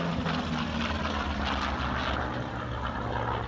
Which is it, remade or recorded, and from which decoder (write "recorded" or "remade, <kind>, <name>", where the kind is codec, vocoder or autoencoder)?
recorded